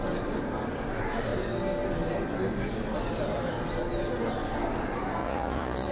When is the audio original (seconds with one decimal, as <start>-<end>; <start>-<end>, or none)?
0.0-5.2